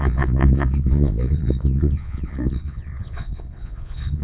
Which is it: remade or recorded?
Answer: remade